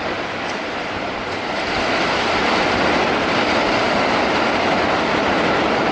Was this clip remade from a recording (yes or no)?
yes